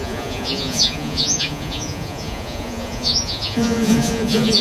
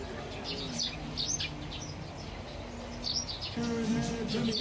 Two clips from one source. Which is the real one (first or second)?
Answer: second